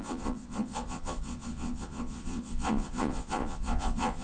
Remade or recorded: remade